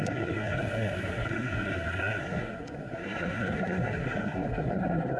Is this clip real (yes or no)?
no